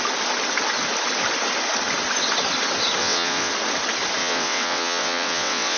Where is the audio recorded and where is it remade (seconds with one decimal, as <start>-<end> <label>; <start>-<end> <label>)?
0.0-3.0 recorded; 3.0-3.5 remade; 3.5-4.2 recorded; 4.2-5.8 remade